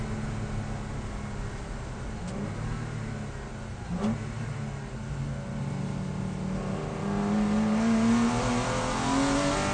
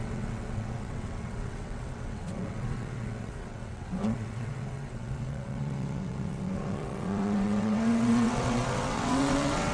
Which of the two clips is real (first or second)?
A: first